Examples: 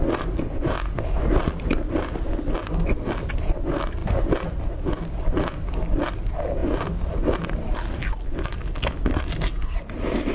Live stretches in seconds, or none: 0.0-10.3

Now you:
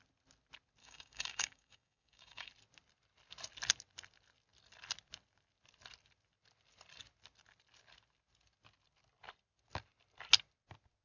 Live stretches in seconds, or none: 0.0-0.8; 2.5-11.0

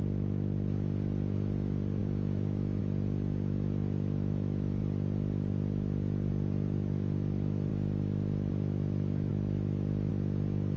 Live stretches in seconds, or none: 4.8-6.3

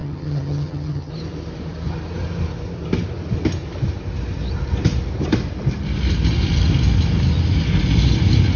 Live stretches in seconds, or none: 1.1-8.6